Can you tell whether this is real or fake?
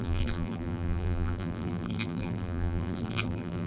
fake